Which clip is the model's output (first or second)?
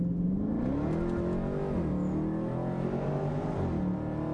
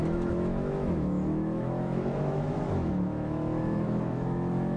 second